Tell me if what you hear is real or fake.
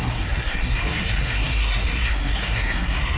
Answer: fake